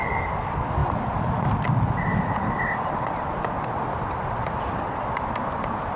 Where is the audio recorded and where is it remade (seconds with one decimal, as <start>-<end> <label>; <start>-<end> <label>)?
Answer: 0.0-6.0 recorded